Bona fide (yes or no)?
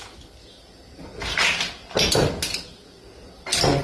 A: yes